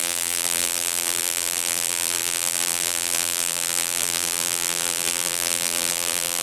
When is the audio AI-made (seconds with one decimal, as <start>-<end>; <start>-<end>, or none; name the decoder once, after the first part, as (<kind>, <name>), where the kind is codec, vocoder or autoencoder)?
0.0-6.4 (vocoder, BigVGAN v2)